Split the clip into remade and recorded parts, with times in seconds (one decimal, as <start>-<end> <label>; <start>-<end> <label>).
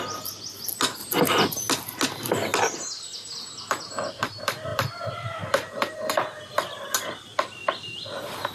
0.0-4.7 recorded; 4.7-6.7 remade; 6.7-7.6 recorded; 7.6-8.5 remade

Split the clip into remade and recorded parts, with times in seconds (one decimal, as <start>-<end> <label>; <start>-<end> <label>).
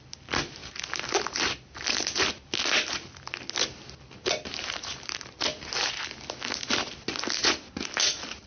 0.0-8.5 recorded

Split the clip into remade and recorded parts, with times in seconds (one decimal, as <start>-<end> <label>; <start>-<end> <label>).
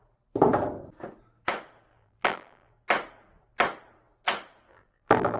0.0-1.9 recorded; 1.9-2.7 remade; 2.7-4.7 recorded; 4.7-5.4 remade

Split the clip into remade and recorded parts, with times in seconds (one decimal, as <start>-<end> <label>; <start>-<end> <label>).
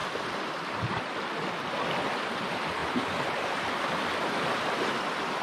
0.0-5.4 remade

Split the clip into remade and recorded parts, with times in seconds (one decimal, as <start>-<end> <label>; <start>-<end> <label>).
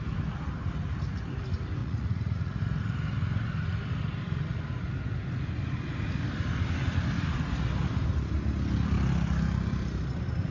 0.0-1.8 recorded; 1.8-2.6 remade; 2.6-10.5 recorded